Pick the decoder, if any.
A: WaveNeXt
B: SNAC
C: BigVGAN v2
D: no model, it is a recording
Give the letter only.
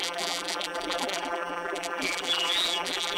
C